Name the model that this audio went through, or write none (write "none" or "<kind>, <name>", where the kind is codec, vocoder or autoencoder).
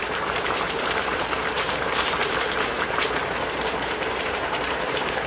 vocoder, BigVGAN v2